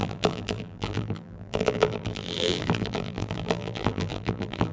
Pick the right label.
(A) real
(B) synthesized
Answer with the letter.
B